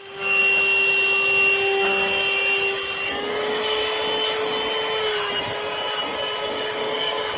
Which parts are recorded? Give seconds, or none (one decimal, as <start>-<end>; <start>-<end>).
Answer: 0.4-3.1; 3.8-6.5